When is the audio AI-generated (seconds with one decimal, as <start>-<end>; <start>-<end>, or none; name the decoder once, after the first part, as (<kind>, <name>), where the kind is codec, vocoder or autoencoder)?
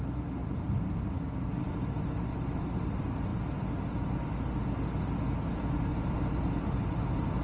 0.4-1.2 (vocoder, BigVGAN v2); 5.9-6.8